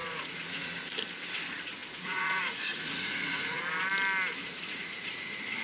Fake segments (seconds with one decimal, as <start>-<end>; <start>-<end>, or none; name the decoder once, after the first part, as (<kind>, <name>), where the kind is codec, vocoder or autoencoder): 0.0-0.8 (vocoder, Vocos); 1.8-3.6; 4.4-5.6